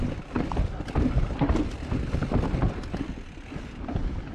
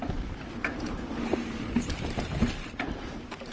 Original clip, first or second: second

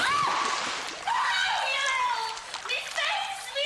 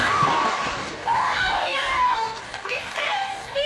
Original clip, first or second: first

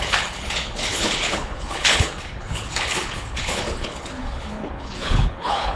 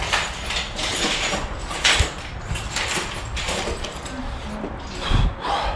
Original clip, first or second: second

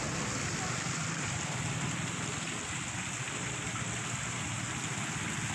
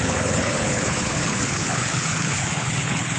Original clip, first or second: first